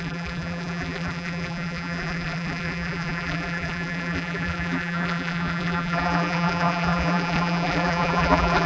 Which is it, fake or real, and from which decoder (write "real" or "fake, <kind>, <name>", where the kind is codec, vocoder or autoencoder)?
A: fake, vocoder, BigVGAN v2